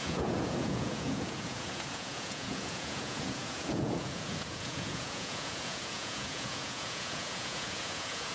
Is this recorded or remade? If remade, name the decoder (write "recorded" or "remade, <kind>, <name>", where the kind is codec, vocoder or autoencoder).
remade, vocoder, Vocos